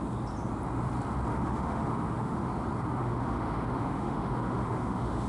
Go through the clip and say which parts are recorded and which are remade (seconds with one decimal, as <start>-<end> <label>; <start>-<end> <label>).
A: 0.0-1.3 recorded; 1.3-2.5 remade; 2.5-3.0 recorded; 3.0-5.3 remade